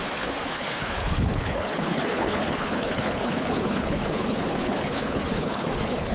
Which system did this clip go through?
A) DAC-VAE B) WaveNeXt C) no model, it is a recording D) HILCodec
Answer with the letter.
D